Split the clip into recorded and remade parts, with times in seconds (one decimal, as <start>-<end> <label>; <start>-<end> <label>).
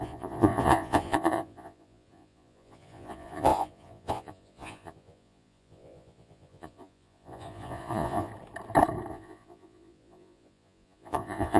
0.0-8.3 remade; 8.3-9.1 recorded; 9.1-11.6 remade